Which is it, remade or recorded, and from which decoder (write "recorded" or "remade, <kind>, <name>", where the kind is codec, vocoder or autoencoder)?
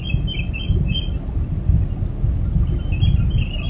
recorded